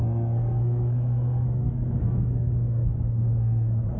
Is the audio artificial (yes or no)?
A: yes